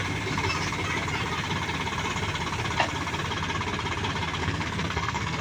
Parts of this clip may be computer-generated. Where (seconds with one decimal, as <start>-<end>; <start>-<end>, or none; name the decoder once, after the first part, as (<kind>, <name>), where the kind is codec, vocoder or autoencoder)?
4.4-5.4 (codec, SNAC)